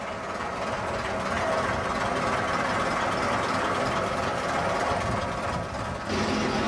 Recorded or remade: recorded